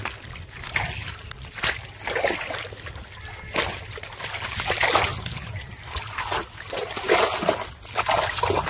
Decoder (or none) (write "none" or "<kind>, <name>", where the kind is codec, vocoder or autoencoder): none